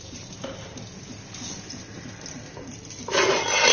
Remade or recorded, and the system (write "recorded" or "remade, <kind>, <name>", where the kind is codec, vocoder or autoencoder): recorded